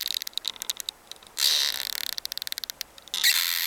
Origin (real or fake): real